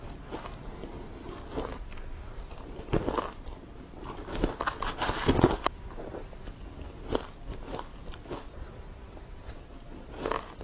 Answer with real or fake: real